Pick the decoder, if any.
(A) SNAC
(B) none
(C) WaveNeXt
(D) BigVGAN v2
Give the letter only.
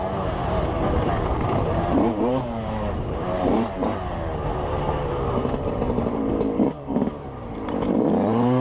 D